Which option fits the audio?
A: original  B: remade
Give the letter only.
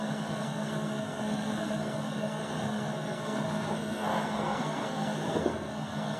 B